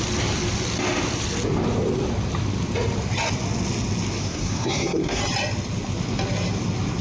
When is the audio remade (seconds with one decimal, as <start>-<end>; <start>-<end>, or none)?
4.2-5.2